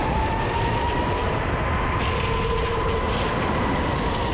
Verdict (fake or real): real